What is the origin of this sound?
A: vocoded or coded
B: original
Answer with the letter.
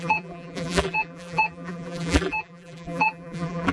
A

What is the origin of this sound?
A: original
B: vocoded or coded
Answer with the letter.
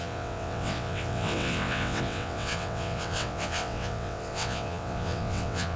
B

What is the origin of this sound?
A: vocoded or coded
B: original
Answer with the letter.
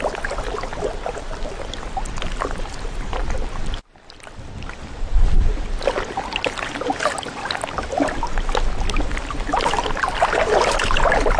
B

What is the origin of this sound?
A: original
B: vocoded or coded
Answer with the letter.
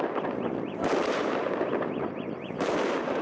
A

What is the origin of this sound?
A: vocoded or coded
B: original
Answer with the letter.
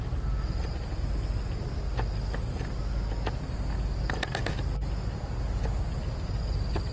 B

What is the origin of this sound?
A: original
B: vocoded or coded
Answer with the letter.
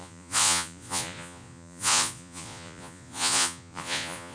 B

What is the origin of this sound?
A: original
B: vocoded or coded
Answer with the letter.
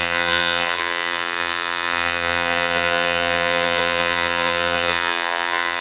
B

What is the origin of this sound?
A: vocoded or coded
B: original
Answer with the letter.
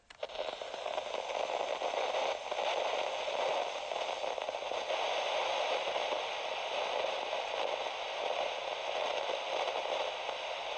B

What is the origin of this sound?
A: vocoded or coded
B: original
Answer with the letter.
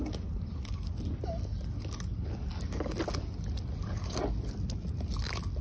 B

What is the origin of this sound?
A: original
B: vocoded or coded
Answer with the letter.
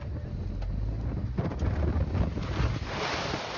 A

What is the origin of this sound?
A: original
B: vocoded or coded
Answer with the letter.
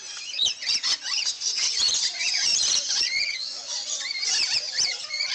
B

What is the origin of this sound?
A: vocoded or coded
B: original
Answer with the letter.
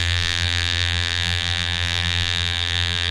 A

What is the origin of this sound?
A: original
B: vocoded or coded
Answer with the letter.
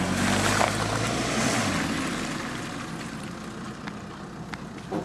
A